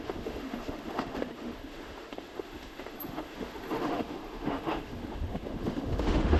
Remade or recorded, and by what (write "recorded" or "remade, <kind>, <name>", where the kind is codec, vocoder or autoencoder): remade, autoencoder, DAC-VAE